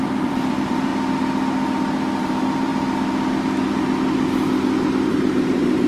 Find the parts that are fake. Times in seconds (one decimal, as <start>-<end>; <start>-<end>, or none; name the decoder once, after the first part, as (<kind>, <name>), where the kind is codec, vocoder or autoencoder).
0.0-0.9 (vocoder, BigVGAN v2); 2.2-2.7; 5.1-5.9